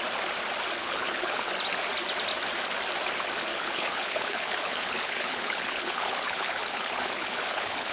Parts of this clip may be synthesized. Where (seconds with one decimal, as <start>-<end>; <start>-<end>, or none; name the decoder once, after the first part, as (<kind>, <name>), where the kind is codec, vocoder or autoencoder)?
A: 0.8-1.5 (codec, HILCodec); 3.5-7.9